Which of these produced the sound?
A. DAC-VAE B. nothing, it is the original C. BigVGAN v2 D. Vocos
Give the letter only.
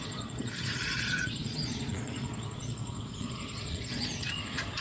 D